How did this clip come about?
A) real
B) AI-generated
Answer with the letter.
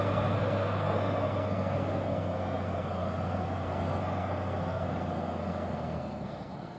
B